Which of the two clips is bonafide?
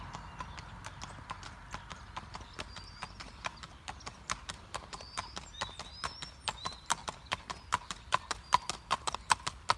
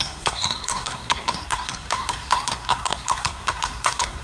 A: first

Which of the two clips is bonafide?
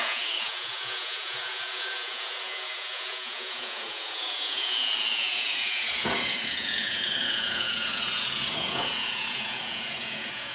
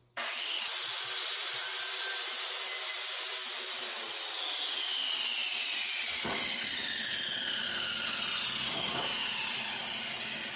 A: second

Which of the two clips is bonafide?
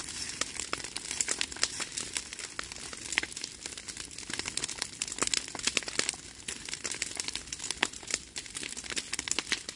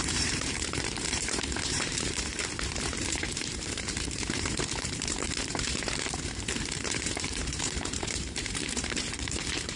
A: first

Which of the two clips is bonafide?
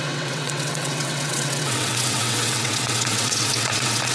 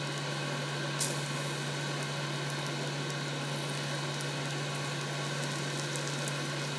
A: second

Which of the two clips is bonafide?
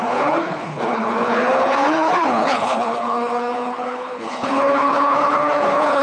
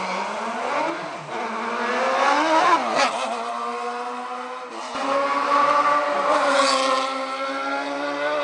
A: second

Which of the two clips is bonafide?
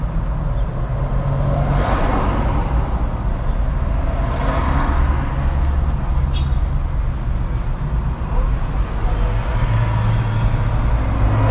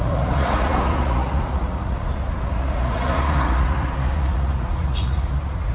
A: first